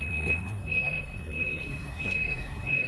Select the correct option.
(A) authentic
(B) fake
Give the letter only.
B